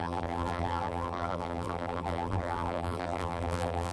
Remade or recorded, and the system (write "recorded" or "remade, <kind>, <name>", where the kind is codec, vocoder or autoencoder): remade, vocoder, BigVGAN v2